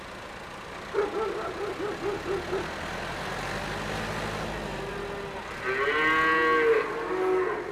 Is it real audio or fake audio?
real